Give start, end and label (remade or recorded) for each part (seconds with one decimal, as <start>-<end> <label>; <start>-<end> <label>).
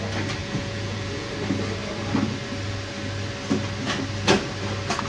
0.0-0.4 recorded; 0.4-1.3 remade; 1.3-5.1 recorded